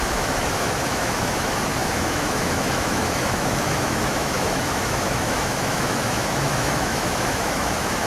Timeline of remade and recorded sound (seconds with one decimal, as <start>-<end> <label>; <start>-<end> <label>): 0.0-8.1 remade